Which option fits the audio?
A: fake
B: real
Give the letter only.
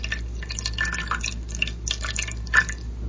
B